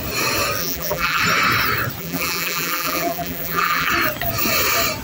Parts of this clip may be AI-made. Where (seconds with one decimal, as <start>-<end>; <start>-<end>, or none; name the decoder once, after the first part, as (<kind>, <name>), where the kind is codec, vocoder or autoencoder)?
0.6-1.2 (vocoder, BigVGAN v2); 2.0-3.9